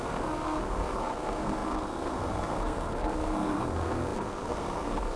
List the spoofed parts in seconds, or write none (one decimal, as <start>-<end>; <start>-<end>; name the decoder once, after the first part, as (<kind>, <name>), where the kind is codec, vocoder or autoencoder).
0.0-5.2 (codec, SNAC)

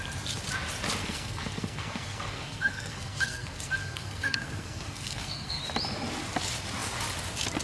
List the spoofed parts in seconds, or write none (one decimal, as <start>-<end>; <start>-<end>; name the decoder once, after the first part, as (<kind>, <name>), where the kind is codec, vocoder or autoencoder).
1.0-5.6 (codec, SNAC)

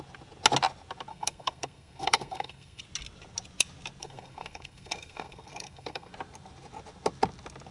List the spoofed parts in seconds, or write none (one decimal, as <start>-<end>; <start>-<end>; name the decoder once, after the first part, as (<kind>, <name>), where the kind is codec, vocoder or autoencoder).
1.1-2.8 (codec, SNAC); 4.0-6.1

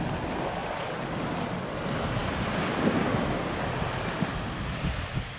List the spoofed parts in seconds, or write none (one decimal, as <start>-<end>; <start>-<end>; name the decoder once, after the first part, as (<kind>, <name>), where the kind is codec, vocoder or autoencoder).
none

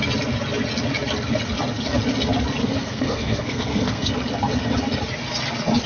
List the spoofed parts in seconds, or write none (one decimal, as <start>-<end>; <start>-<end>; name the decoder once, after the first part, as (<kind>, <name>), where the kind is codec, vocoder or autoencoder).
2.6-4.1 (codec, SNAC)

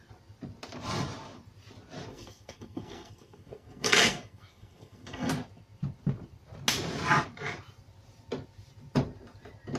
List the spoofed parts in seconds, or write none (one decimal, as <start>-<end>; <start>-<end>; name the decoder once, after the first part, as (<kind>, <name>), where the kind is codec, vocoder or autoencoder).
2.1-5.3 (codec, SNAC)

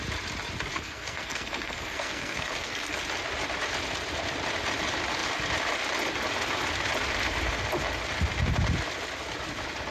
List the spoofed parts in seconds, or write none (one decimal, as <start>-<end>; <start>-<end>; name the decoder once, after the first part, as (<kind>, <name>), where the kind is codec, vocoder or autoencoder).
0.7-3.0 (codec, SNAC)